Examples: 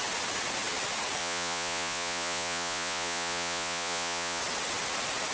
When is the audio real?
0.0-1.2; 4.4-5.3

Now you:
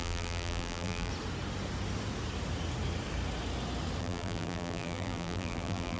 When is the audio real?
1.1-4.0

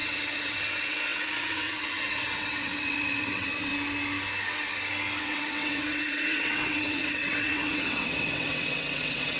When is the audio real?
3.7-5.2

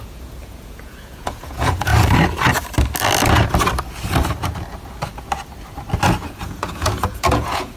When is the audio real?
1.9-6.3

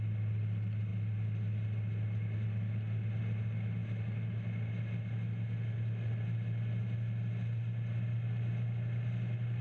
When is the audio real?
0.0-9.6

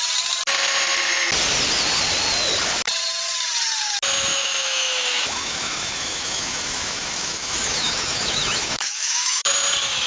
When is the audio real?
0.0-4.3; 9.5-10.1

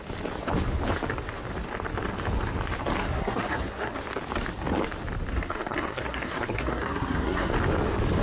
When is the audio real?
0.0-3.0; 4.0-5.3; 7.5-8.2

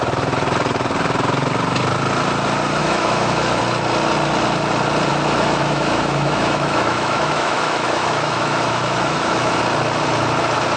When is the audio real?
0.0-2.8; 3.6-5.1; 9.6-10.8